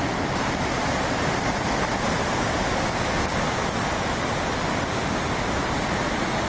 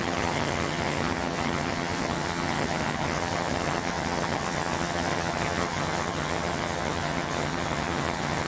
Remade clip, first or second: second